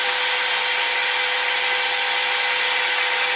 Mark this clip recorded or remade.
recorded